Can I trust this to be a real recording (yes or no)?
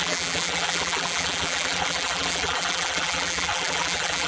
no